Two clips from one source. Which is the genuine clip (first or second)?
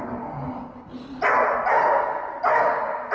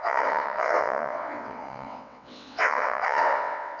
first